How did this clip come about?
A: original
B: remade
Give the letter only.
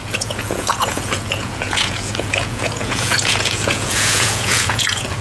B